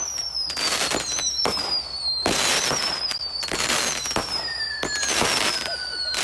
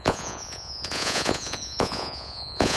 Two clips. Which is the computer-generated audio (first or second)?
second